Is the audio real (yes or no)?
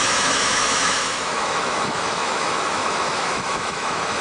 no